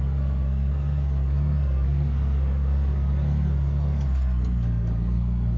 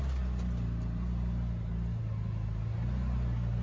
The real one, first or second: second